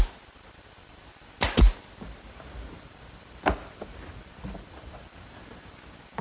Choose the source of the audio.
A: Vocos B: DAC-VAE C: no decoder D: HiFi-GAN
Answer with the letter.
C